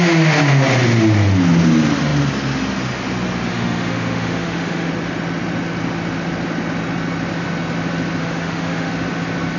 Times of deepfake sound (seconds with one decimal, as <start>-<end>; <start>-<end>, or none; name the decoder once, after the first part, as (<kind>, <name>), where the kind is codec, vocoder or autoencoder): 3.5-4.9 (autoencoder, DAC-VAE); 8.2-8.9